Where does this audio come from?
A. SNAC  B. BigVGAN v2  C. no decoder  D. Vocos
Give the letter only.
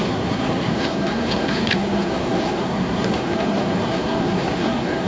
A